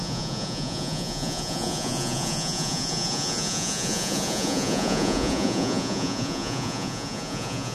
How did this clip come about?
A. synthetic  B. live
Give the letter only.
A